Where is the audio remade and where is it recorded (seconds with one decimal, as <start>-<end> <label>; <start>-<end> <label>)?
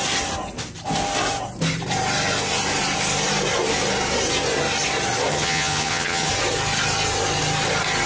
0.0-5.3 recorded; 5.3-6.3 remade; 6.3-8.1 recorded